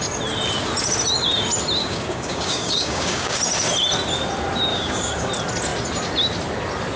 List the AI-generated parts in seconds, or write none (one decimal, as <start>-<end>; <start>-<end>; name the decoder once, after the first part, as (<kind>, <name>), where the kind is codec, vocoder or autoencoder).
1.8-3.4 (codec, DAC); 4.7-5.3